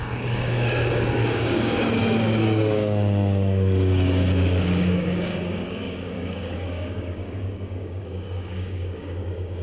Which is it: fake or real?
fake